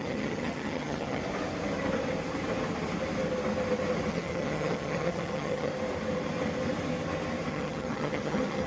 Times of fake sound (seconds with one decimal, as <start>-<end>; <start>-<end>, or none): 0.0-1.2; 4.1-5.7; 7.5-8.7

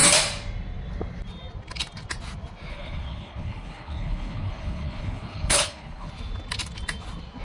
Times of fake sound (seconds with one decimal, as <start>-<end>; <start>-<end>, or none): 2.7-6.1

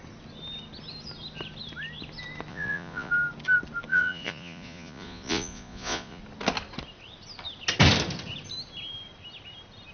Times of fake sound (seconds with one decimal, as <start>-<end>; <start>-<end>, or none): 2.5-3.1; 3.9-6.2